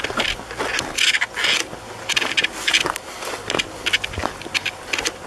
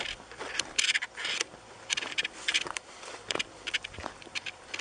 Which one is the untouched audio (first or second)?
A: first